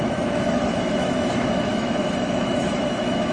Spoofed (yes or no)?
yes